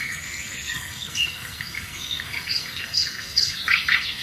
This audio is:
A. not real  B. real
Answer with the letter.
A